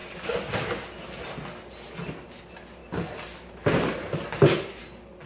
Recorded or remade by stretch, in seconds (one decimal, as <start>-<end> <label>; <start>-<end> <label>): 0.0-5.3 recorded